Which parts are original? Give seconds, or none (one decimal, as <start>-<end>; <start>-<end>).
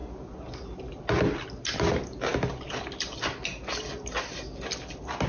0.0-5.3